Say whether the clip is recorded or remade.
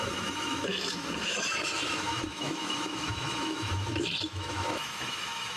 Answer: remade